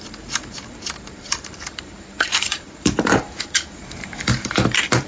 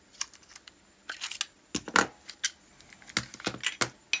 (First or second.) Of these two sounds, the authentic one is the second